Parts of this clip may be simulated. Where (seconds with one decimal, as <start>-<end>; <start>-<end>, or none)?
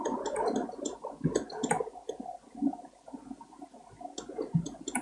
none